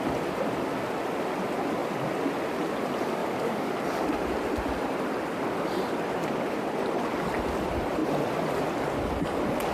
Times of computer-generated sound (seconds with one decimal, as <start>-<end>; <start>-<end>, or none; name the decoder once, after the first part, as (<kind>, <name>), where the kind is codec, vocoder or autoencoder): 3.2-3.7 (codec, DAC)